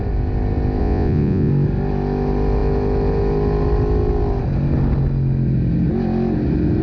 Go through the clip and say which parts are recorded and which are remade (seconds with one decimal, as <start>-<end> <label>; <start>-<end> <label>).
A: 0.0-0.8 recorded; 0.8-1.5 remade; 1.5-6.8 recorded